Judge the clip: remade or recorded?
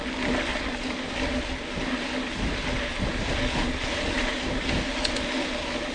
recorded